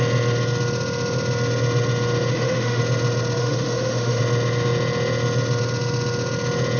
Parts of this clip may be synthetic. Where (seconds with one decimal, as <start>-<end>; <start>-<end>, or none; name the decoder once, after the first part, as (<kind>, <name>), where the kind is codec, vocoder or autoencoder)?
2.3-2.8 (autoencoder, DAC-VAE); 3.4-4.2